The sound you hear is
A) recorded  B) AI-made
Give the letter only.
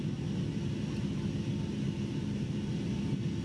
A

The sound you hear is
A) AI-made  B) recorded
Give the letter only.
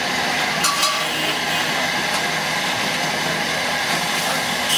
B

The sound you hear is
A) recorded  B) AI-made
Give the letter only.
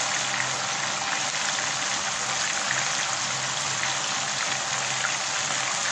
A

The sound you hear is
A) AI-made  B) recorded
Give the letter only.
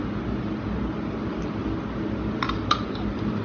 B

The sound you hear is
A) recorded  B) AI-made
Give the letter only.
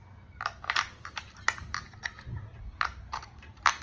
B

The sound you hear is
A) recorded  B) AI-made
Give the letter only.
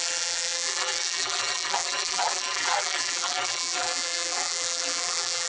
B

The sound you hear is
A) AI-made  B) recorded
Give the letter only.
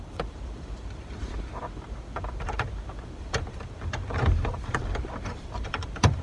A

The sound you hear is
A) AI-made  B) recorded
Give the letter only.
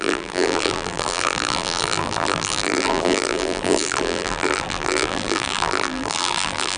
A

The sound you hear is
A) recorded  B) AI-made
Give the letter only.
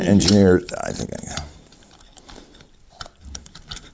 B